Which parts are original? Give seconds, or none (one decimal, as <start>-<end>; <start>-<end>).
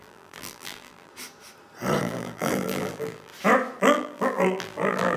1.1-2.0; 3.3-3.8